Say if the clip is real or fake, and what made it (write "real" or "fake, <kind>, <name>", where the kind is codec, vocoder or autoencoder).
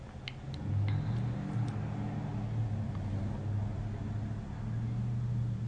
real